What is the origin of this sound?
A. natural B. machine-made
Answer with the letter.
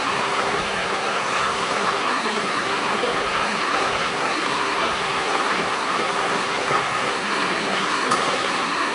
B